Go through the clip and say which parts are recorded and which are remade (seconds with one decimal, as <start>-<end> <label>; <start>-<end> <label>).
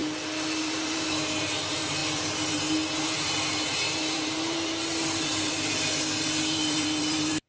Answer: 0.0-0.6 recorded; 0.6-7.5 remade